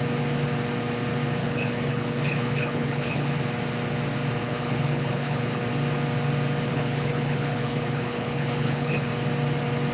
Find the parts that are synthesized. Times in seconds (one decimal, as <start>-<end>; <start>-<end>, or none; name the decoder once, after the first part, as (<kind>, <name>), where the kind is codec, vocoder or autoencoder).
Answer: 1.4-3.4 (codec, HILCodec); 4.4-5.6; 6.7-9.1